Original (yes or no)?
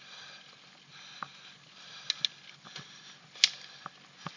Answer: yes